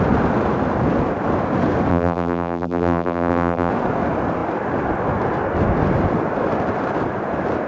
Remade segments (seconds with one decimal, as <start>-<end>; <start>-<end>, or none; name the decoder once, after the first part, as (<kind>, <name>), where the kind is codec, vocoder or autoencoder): 1.9-3.7 (vocoder, BigVGAN v2)